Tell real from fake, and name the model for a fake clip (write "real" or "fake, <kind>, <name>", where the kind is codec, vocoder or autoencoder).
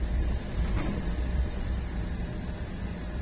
fake, vocoder, BigVGAN v2